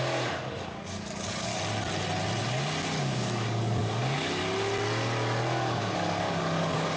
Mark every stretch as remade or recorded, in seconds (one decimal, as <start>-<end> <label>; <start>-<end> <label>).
0.0-1.5 remade; 1.5-3.0 recorded; 3.0-4.4 remade; 4.4-5.5 recorded; 5.5-7.0 remade